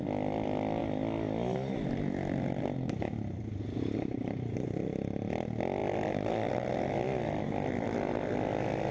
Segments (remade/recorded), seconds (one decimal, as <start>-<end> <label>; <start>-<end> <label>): 0.0-8.9 recorded